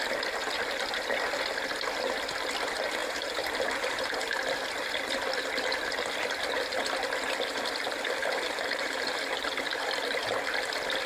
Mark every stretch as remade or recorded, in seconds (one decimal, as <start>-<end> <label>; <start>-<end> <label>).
0.0-3.0 recorded; 3.0-4.4 remade; 4.4-8.2 recorded; 8.2-9.2 remade; 9.2-11.1 recorded